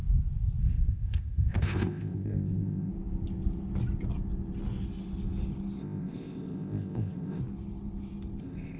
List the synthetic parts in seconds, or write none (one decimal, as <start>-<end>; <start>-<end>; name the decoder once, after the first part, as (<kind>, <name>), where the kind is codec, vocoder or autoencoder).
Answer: 0.6-2.9 (codec, ZipCodec); 5.8-7.4; 8.4-8.8